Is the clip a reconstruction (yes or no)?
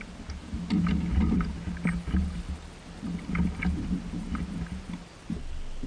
no